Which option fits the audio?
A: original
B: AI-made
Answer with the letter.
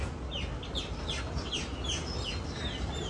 A